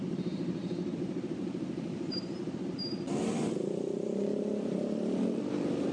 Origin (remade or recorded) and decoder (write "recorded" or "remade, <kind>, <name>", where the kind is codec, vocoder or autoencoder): recorded